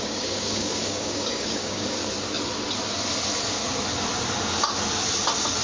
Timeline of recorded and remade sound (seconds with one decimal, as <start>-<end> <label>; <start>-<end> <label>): 0.0-2.0 remade; 2.0-5.6 recorded